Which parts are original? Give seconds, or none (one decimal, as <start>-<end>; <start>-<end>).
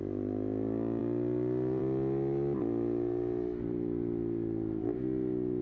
0.0-5.6